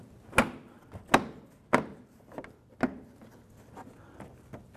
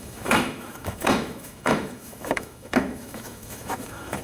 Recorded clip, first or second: first